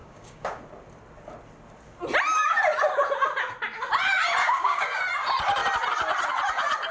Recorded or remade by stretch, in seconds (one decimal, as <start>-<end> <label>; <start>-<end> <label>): 0.0-0.6 remade; 0.6-4.4 recorded; 4.4-5.0 remade; 5.0-6.9 recorded